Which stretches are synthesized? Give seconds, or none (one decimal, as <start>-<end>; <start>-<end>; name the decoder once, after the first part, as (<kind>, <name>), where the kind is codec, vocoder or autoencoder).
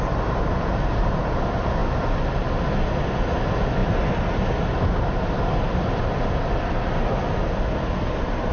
none